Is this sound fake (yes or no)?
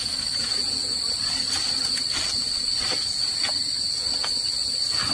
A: no